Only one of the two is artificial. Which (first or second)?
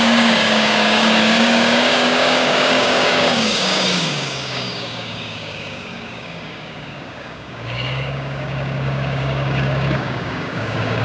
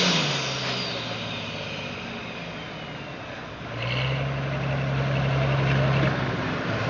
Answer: first